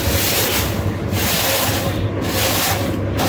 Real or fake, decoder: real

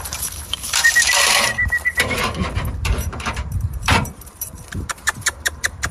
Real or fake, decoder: fake, vocoder, BigVGAN v2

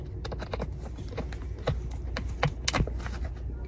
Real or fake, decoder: real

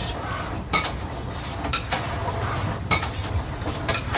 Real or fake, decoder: fake, vocoder, BigVGAN v2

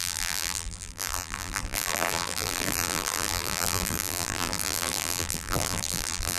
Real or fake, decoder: fake, vocoder, BigVGAN v2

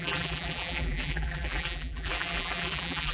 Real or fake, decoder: fake, vocoder, BigVGAN v2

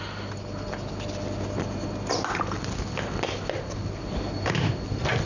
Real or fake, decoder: real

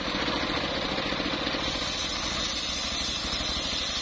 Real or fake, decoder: real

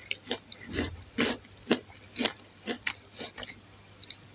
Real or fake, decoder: real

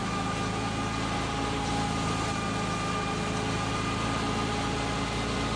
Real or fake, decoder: real